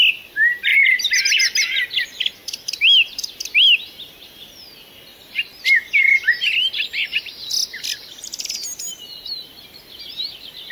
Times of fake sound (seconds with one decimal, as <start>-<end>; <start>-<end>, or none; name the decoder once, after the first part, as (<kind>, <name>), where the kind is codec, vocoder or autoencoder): none